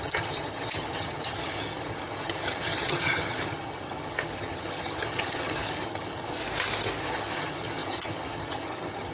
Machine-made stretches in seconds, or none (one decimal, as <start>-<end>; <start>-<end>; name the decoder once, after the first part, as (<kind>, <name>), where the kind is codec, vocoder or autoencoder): 0.0-6.4 (vocoder, HiFi-GAN); 7.0-9.1